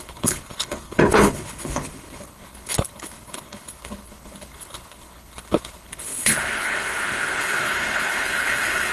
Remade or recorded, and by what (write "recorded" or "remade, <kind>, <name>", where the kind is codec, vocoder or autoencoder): remade, codec, HILCodec